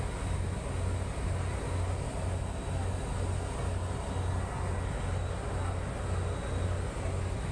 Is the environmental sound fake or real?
real